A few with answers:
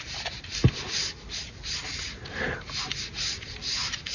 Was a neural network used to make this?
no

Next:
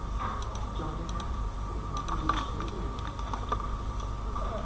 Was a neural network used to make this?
no